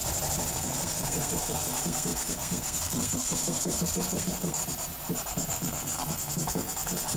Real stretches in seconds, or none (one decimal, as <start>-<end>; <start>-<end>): 0.0-0.5; 4.6-5.3